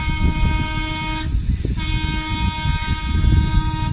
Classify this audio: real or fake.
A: real